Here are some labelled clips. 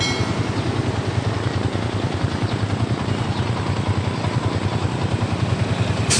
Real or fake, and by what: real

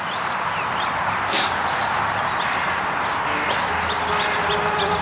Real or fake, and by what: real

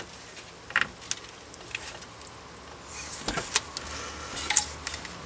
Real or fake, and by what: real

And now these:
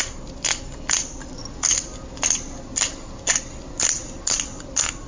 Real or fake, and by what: real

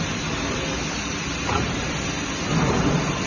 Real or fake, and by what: real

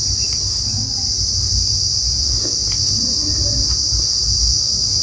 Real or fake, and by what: real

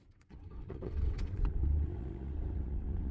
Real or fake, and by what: fake, vocoder, WaveNeXt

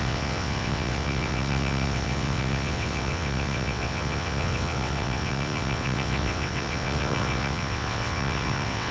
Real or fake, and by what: fake, vocoder, WaveNeXt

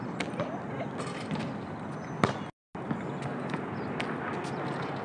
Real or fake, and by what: real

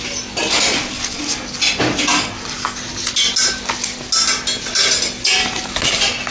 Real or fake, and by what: real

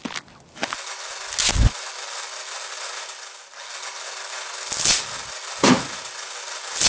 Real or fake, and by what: real